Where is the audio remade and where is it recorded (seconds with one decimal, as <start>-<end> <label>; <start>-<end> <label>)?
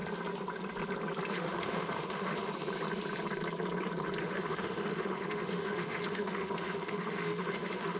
0.0-1.3 recorded; 1.3-2.5 remade; 2.5-4.2 recorded; 4.2-8.0 remade